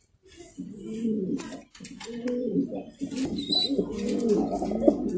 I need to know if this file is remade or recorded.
recorded